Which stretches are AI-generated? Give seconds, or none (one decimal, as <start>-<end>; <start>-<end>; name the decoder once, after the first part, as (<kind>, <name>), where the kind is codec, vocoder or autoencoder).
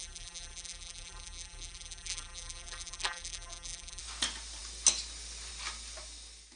0.0-4.0 (vocoder, BigVGAN v2)